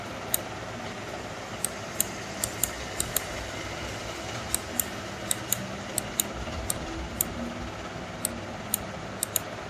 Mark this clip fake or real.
real